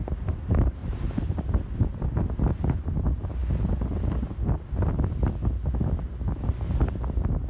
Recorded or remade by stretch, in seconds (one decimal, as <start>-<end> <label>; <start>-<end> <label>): 0.0-7.5 recorded